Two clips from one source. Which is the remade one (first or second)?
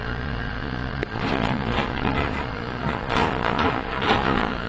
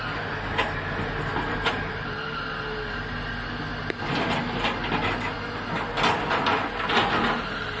first